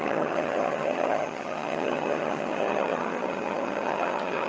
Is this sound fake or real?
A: fake